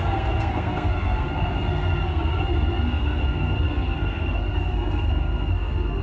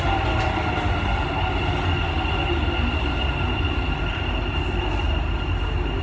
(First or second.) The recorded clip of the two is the second